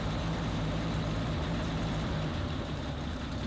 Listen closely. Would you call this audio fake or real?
fake